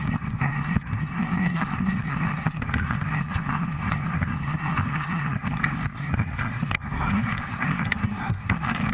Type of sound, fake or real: fake